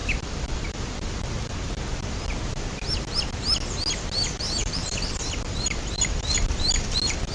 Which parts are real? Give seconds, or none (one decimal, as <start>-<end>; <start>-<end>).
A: 1.2-4.6; 6.2-7.3